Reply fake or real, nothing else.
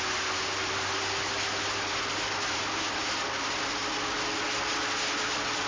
real